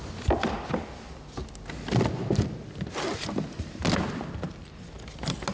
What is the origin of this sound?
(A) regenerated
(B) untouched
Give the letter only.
B